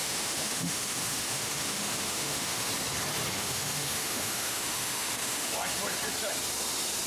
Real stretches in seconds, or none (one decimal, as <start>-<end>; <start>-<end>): 2.7-3.3; 5.5-7.1